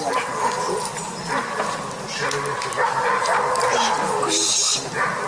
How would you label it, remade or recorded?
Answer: recorded